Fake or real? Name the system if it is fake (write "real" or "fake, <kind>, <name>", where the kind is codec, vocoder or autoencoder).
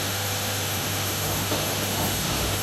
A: fake, autoencoder, DAC-VAE